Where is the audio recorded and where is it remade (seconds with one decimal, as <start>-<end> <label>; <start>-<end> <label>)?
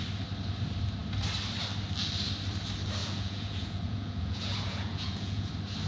0.0-3.0 recorded; 3.0-5.5 remade; 5.5-5.9 recorded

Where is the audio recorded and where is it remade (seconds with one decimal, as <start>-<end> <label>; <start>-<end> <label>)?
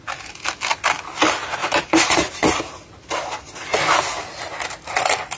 0.0-1.6 recorded; 1.6-2.3 remade; 2.3-5.4 recorded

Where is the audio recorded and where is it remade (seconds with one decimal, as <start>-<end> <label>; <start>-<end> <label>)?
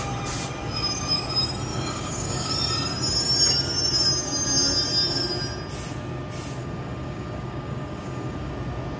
0.0-1.7 recorded; 1.7-2.5 remade; 2.5-6.6 recorded; 6.6-8.5 remade; 8.5-9.0 recorded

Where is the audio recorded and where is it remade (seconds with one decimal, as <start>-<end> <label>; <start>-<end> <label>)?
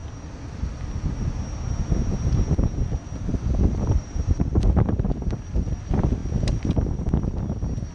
0.0-3.3 recorded; 3.3-5.1 remade; 5.1-7.9 recorded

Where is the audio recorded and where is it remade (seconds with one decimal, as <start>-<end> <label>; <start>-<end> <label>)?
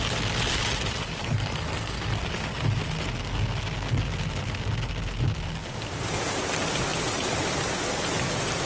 0.0-1.2 recorded; 1.2-2.3 remade; 2.3-8.7 recorded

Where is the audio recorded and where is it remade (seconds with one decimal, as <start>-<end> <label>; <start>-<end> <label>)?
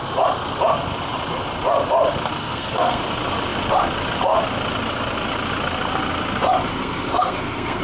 0.0-2.4 recorded; 2.4-3.0 remade; 3.0-6.7 recorded; 6.7-7.8 remade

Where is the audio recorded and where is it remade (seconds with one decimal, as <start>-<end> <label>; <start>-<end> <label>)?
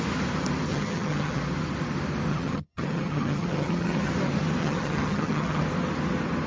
0.0-0.7 recorded; 0.7-1.4 remade; 1.4-2.3 recorded; 2.3-4.1 remade; 4.1-4.6 recorded; 4.6-5.6 remade; 5.6-6.5 recorded